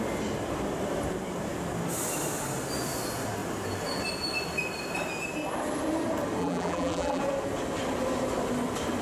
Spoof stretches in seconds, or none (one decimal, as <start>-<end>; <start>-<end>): 6.4-7.2